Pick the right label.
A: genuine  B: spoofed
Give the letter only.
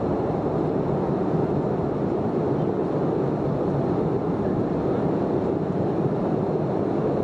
A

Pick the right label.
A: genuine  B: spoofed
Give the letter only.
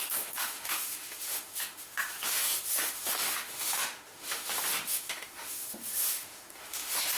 B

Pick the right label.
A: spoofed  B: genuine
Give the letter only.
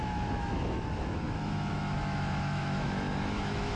A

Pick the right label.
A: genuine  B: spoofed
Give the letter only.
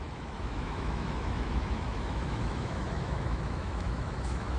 B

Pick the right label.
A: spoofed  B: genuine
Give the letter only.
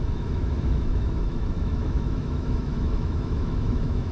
A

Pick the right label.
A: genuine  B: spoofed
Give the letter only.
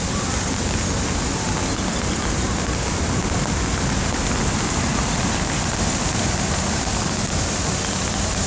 A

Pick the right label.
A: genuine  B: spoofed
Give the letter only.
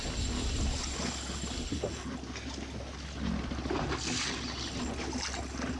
A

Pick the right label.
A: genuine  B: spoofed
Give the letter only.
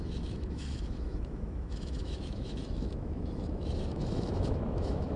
B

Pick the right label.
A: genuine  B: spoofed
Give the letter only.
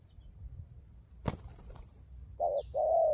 A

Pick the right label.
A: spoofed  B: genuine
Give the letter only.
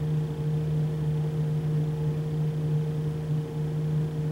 B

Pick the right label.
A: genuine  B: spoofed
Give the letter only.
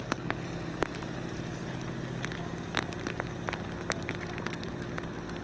A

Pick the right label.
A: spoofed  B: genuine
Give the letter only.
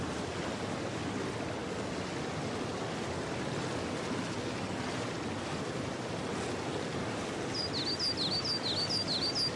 B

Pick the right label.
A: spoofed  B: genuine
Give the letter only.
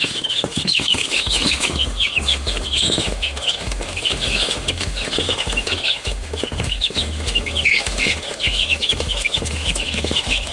A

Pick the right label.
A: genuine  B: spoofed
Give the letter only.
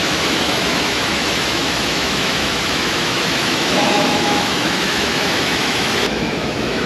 B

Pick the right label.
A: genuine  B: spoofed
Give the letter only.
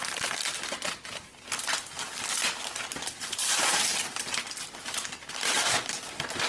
A